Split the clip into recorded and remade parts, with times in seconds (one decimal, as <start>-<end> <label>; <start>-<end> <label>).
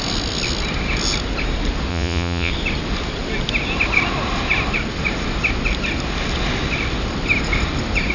0.0-1.9 recorded; 1.9-2.5 remade; 2.5-8.1 recorded